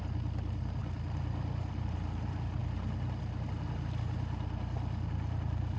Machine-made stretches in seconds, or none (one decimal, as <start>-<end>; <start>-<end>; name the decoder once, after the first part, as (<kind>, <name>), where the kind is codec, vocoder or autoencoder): none